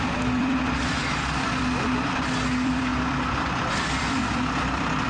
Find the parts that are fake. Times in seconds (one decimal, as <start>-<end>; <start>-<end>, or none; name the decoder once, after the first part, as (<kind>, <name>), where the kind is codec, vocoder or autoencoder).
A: 0.0-5.1 (vocoder, BigVGAN v2)